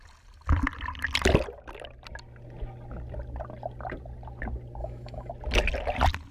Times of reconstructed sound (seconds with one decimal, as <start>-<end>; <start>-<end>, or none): 4.8-5.3